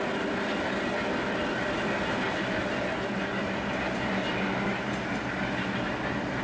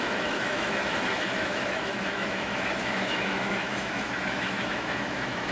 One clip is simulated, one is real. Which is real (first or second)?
first